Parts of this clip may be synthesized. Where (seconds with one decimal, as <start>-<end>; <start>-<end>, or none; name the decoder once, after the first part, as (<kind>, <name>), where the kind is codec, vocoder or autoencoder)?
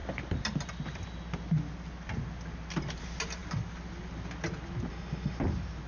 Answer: 4.9-5.4 (autoencoder, DAC-VAE)